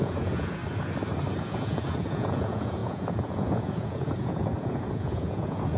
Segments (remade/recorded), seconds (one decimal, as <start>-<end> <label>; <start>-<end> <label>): 0.0-0.6 remade; 0.6-1.4 recorded; 1.4-5.8 remade

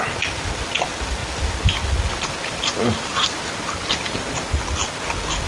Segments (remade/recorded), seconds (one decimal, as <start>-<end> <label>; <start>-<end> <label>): 0.0-5.5 recorded